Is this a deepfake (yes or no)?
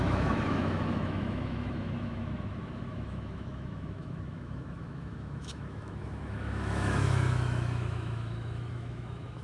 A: yes